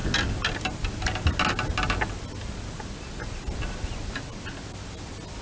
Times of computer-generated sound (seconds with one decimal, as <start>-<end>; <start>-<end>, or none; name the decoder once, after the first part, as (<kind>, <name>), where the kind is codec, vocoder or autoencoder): none